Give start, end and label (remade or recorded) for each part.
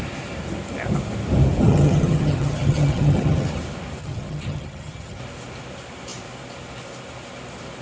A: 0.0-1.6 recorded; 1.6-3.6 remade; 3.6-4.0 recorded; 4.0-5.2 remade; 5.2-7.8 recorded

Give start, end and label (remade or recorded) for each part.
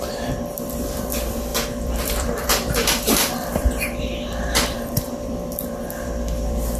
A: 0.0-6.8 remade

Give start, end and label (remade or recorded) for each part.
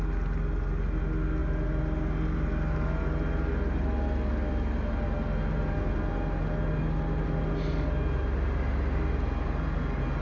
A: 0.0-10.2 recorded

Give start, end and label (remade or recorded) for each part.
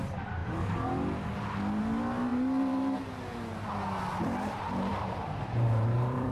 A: 0.0-2.3 recorded; 2.3-3.1 remade; 3.1-4.9 recorded; 4.9-6.3 remade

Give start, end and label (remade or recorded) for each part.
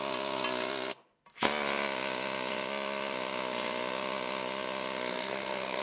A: 0.0-5.1 recorded; 5.1-5.8 remade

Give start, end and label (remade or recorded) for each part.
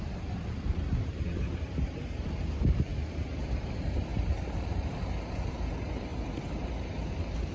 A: 0.0-2.9 remade; 2.9-3.6 recorded; 3.6-7.5 remade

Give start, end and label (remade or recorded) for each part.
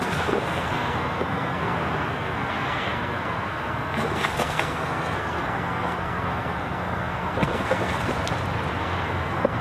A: 0.0-8.1 remade; 8.1-8.8 recorded; 8.8-9.6 remade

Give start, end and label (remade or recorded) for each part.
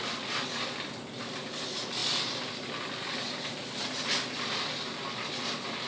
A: 0.0-5.9 recorded